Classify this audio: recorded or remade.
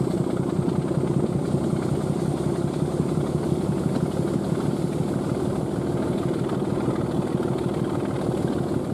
recorded